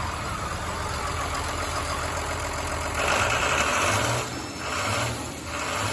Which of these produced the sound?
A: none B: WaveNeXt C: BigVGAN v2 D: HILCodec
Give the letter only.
C